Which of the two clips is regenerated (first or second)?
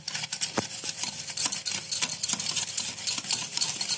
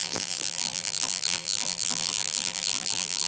second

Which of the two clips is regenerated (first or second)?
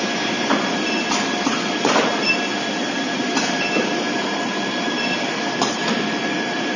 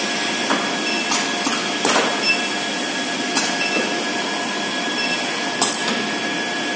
first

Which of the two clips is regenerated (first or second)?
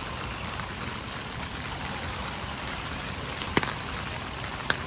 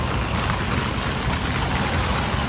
first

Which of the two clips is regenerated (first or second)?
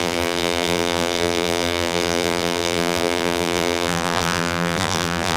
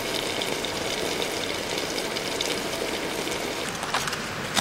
first